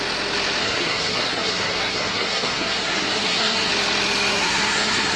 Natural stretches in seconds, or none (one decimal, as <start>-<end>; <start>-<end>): 0.0-0.6; 3.7-4.3